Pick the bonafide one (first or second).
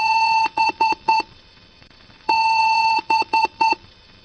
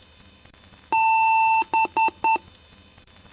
second